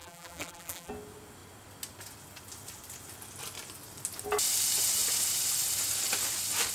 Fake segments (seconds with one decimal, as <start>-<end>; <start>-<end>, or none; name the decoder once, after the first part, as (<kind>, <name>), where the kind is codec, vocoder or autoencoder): 0.0-0.9 (vocoder, BigVGAN v2)